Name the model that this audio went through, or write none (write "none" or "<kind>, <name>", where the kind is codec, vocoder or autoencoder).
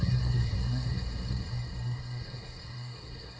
codec, SNAC